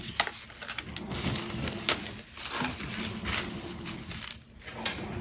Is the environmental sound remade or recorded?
recorded